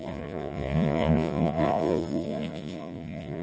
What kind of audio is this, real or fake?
fake